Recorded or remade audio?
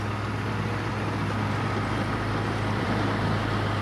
remade